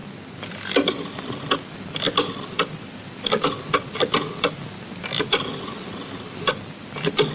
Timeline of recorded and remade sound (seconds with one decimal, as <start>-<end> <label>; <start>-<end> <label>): 0.0-7.3 recorded